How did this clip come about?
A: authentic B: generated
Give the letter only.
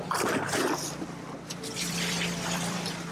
B